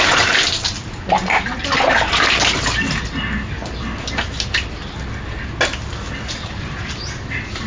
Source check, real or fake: real